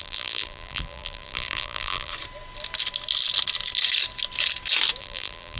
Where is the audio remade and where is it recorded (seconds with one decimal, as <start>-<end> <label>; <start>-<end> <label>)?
0.0-2.1 remade; 2.1-5.0 recorded; 5.0-5.6 remade